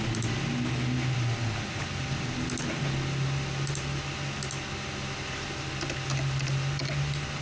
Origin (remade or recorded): recorded